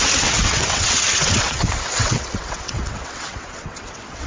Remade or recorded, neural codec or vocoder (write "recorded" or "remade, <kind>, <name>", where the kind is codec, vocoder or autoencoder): remade, vocoder, WaveNeXt